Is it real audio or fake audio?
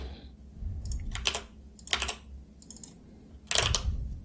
real